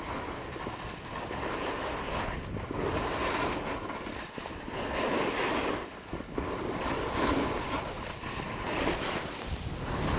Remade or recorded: recorded